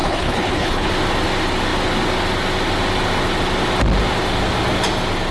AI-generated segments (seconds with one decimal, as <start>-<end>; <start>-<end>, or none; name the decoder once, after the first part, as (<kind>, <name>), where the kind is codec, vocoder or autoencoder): 0.0-0.9 (codec, HILCodec)